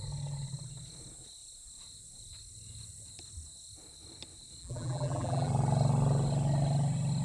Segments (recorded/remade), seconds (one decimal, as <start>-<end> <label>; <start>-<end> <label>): 0.0-4.6 recorded; 4.6-5.5 remade; 5.5-7.2 recorded